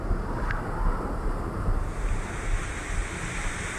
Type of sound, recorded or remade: recorded